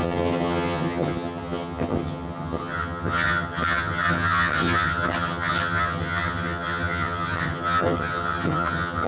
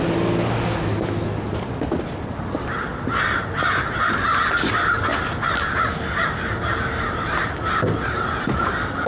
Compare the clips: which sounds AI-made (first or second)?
first